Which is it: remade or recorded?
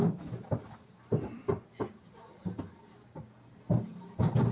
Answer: recorded